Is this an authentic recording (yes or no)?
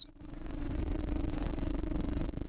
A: no